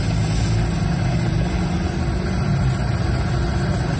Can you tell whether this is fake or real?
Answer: real